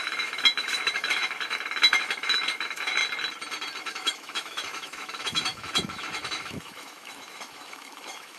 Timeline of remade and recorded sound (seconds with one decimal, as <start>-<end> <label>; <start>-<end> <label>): 0.0-3.0 remade; 3.0-3.8 recorded; 3.8-8.4 remade